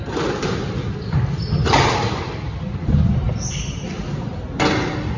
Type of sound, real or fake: real